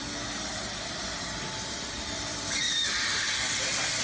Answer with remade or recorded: remade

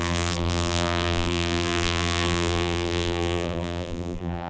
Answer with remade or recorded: remade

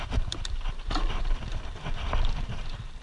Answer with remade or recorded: remade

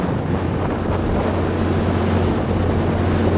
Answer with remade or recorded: recorded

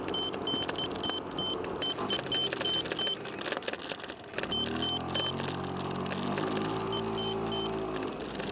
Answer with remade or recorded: recorded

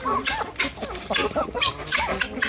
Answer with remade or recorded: recorded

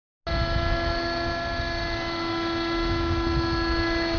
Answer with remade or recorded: recorded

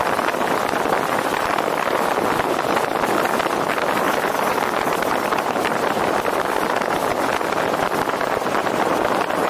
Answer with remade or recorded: recorded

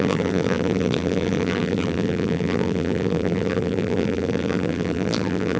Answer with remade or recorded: remade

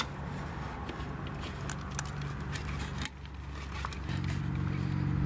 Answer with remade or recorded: recorded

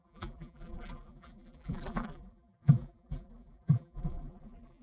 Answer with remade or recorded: remade